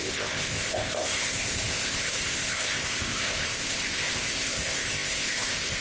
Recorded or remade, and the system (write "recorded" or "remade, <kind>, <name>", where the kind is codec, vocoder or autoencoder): remade, codec, ZipCodec